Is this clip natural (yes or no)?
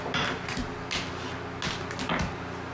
yes